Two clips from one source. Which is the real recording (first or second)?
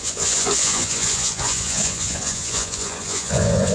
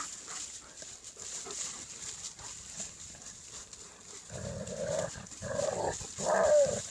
second